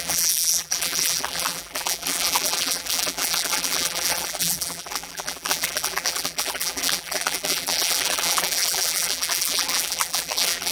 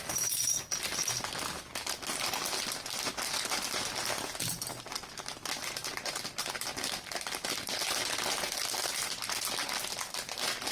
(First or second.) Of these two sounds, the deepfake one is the first